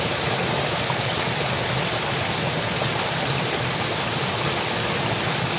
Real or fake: real